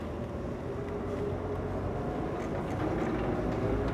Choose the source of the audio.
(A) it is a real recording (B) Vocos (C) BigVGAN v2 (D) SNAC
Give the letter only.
A